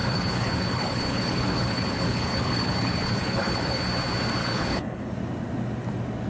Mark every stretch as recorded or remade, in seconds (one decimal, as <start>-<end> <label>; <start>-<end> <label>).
0.0-3.8 remade; 3.8-4.4 recorded; 4.4-5.1 remade; 5.1-6.3 recorded